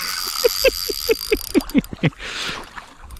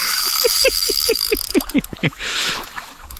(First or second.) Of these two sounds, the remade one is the second